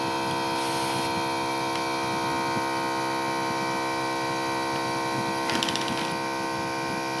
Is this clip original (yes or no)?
no